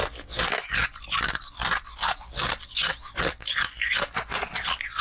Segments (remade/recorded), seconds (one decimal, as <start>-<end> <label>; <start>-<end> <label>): 0.0-0.8 recorded; 0.8-2.2 remade; 2.2-5.0 recorded